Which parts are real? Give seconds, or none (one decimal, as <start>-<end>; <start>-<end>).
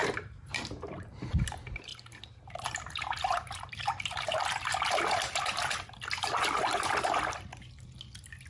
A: 1.3-1.9; 4.4-8.5